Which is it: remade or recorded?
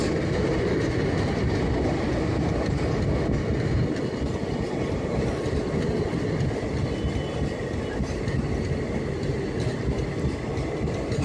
recorded